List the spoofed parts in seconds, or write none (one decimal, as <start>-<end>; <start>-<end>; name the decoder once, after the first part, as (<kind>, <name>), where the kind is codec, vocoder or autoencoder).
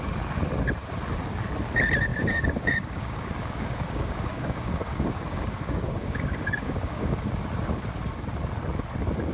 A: 2.1-7.3 (codec, DAC)